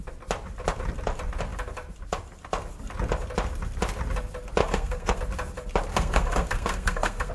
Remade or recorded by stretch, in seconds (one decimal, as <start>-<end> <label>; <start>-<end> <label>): 0.0-4.6 recorded; 4.6-5.2 remade; 5.2-5.9 recorded; 5.9-7.3 remade